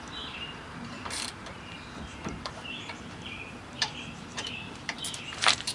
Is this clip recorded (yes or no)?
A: no